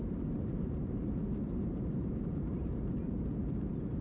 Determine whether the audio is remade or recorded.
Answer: remade